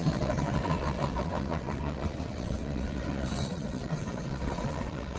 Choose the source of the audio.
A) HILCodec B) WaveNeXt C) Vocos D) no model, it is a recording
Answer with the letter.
B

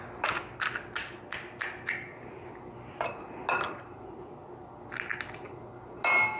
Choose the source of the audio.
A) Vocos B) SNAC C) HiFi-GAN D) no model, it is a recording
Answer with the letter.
D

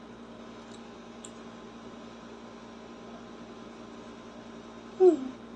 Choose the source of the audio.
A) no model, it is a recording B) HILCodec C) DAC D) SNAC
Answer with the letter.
A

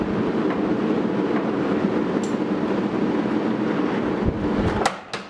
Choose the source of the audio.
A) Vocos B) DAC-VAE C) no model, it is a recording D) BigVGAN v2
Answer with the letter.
C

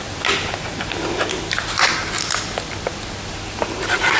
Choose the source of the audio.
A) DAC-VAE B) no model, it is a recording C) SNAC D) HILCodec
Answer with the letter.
B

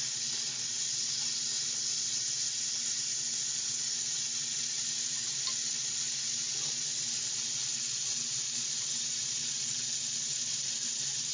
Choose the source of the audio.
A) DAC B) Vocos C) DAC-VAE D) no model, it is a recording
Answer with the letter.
D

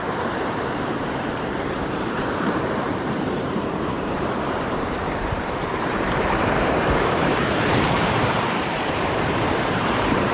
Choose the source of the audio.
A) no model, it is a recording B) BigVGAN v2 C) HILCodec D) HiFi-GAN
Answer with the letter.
B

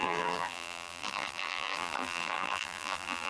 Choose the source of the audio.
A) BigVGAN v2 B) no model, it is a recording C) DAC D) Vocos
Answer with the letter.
A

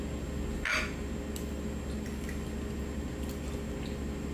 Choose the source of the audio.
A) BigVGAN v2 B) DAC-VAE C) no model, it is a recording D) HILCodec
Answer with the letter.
C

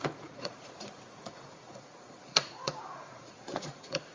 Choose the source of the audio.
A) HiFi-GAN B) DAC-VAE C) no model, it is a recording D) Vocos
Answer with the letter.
D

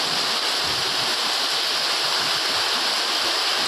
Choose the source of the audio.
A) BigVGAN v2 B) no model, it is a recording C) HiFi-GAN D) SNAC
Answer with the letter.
B